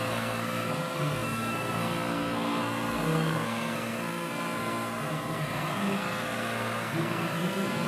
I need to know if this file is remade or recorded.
remade